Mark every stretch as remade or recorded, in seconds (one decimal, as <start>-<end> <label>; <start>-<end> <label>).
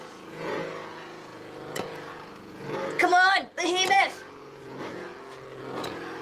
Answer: 0.0-3.1 remade; 3.1-3.9 recorded; 3.9-5.1 remade; 5.1-5.6 recorded; 5.6-6.2 remade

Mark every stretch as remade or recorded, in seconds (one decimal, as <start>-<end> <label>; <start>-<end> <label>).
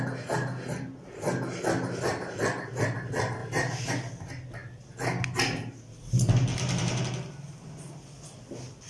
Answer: 0.0-3.4 recorded; 3.4-3.9 remade; 3.9-6.5 recorded; 6.5-7.0 remade; 7.0-8.9 recorded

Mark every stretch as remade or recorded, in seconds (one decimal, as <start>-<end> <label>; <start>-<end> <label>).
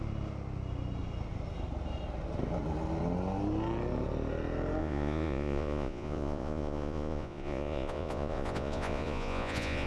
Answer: 0.0-4.8 recorded; 4.8-9.9 remade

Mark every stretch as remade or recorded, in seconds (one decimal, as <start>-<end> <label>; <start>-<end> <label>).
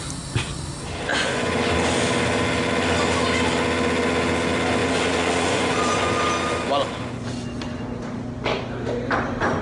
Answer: 0.0-1.1 recorded; 1.1-1.6 remade; 1.6-4.8 recorded; 4.8-6.1 remade; 6.1-9.6 recorded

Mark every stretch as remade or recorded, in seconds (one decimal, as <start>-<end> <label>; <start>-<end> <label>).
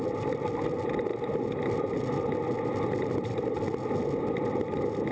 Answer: 0.0-5.1 recorded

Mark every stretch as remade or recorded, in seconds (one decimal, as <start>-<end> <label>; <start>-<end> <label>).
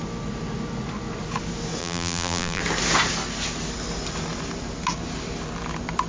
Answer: 0.0-1.8 recorded; 1.8-2.6 remade; 2.6-6.1 recorded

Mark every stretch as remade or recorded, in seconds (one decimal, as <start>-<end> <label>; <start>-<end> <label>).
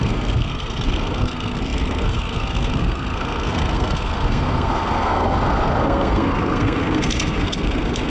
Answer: 0.0-8.1 remade